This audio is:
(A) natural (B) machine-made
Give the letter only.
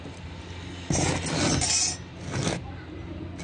A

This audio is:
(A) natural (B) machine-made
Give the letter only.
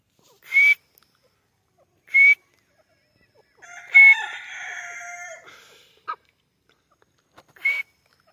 A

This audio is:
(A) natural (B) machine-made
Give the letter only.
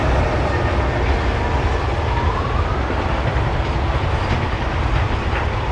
A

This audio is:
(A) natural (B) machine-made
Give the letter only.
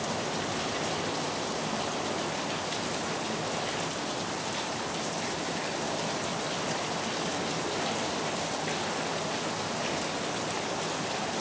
A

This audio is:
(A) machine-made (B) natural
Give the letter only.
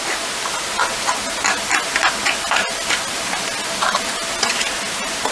B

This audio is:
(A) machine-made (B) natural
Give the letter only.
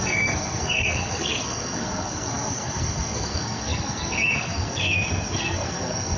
A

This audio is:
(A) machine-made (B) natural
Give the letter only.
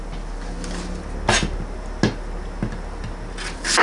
B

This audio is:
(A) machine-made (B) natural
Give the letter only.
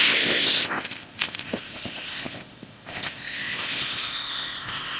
A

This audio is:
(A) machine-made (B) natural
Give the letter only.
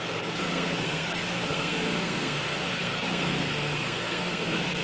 A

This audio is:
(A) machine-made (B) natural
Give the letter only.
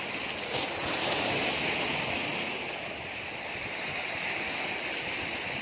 B